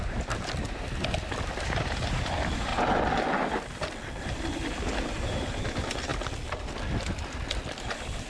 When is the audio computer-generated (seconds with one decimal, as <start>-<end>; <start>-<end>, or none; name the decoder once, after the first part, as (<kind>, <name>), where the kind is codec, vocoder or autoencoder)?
0.0-2.7 (vocoder, BigVGAN v2); 5.1-6.1; 7.7-8.3